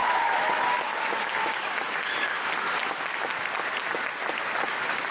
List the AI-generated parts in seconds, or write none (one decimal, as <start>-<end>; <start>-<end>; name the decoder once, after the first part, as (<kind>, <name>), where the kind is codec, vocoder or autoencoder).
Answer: 0.0-2.3 (autoencoder, DAC-VAE)